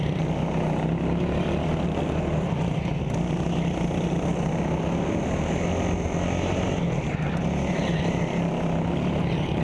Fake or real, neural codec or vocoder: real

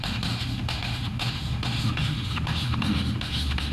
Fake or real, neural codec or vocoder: fake, autoencoder, DAC-VAE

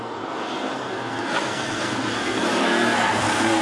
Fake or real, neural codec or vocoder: fake, codec, SNAC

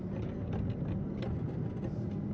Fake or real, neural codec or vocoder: real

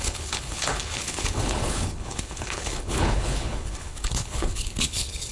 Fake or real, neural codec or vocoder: fake, codec, HILCodec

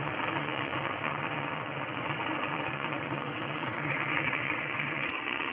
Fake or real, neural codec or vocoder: fake, vocoder, WaveNeXt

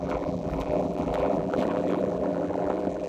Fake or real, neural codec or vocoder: fake, vocoder, BigVGAN v2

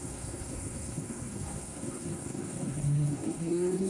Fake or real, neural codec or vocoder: fake, codec, SNAC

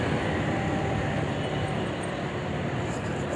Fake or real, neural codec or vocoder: real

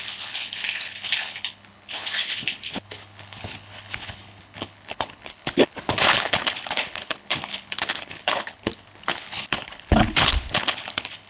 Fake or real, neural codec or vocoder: fake, codec, HILCodec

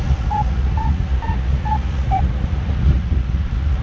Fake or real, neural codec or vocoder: fake, vocoder, Vocos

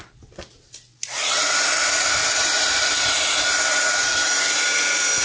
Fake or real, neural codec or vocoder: real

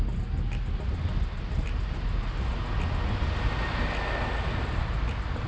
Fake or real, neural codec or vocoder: real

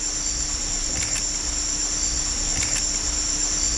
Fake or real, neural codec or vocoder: real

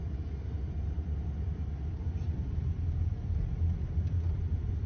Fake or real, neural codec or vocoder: real